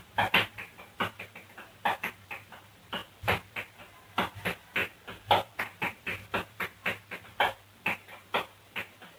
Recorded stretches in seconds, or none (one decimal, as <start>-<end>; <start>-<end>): 3.0-3.7; 4.8-5.6; 6.8-7.8